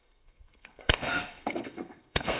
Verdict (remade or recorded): remade